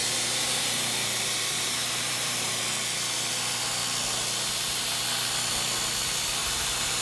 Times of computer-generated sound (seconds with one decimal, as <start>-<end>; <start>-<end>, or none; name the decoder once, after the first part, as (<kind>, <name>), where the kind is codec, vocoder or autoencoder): 0.0-2.6 (vocoder, BigVGAN v2); 6.4-7.0